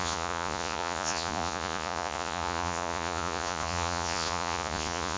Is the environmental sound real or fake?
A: fake